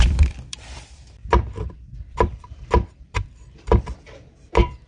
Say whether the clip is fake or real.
fake